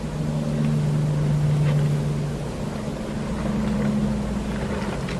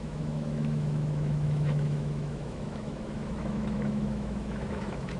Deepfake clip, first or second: second